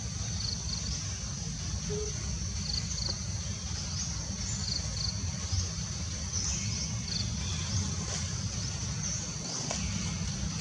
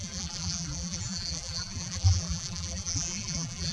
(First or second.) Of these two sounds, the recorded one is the first